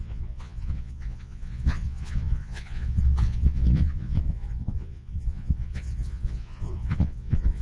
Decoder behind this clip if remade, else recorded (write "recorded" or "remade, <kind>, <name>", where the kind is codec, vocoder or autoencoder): remade, vocoder, Vocos